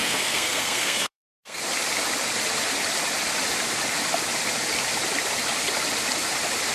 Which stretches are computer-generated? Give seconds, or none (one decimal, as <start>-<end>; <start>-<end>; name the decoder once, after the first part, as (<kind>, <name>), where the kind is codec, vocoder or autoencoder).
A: 0.0-1.6 (codec, SNAC)